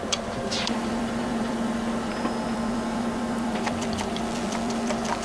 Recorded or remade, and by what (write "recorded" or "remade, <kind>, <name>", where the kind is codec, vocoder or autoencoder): remade, vocoder, BigVGAN v2